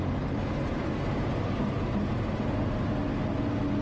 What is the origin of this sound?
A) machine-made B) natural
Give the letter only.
B